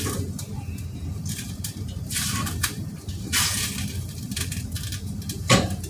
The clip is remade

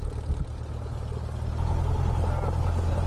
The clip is recorded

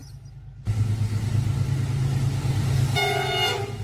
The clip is recorded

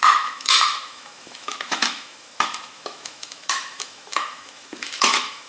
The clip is remade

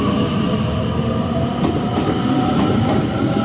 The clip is recorded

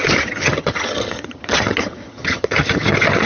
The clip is remade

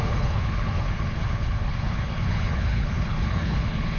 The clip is remade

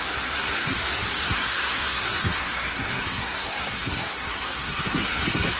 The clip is remade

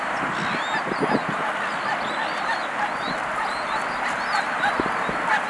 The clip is recorded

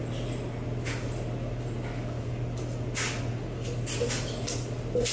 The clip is recorded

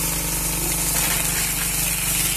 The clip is recorded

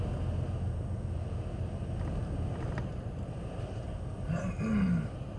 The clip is recorded